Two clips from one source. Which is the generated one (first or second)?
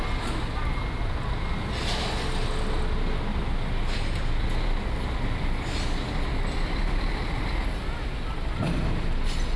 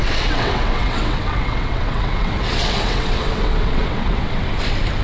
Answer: second